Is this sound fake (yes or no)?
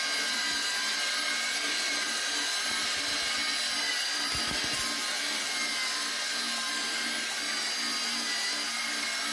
no